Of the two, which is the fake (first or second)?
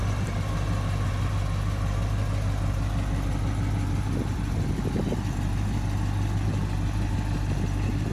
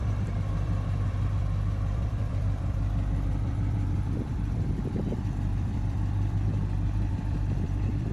second